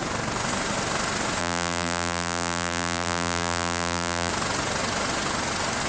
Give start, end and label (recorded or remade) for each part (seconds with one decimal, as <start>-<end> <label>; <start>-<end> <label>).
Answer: 0.0-1.4 recorded; 1.4-4.3 remade; 4.3-5.9 recorded